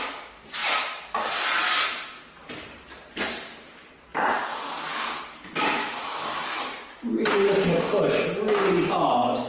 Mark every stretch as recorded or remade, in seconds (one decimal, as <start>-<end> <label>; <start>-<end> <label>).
0.0-5.8 recorded; 5.8-6.6 remade; 6.6-9.5 recorded